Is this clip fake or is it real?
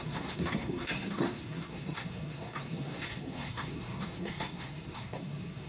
fake